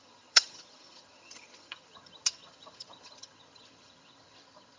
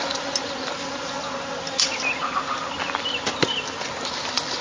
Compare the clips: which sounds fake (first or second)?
first